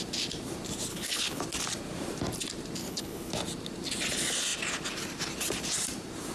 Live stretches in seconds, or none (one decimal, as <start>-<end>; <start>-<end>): 0.0-0.9; 1.4-2.8; 3.3-6.3